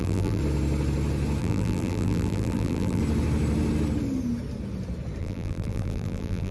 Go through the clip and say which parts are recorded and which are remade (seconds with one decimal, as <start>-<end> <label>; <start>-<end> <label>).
0.0-0.4 remade; 0.4-1.4 recorded; 1.4-3.0 remade; 3.0-5.2 recorded; 5.2-6.5 remade